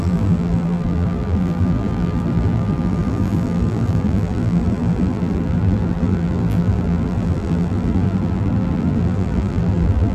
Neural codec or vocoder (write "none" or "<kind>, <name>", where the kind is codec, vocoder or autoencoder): vocoder, BigVGAN v2